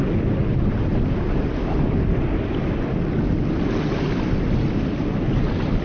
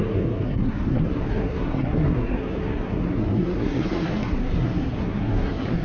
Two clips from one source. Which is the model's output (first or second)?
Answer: second